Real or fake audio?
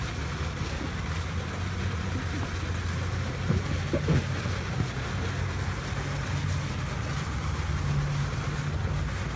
real